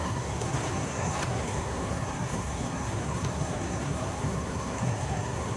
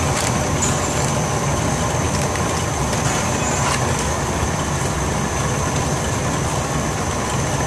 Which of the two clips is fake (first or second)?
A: first